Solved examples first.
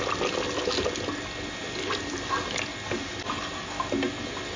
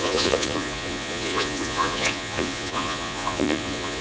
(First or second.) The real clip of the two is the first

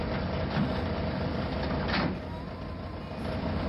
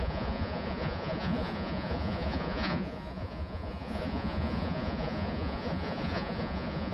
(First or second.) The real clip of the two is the first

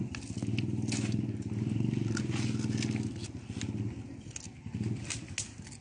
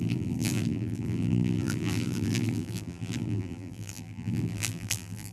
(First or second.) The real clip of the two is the first